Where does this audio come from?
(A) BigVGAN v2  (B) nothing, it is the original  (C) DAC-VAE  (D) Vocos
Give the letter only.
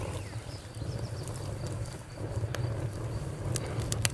B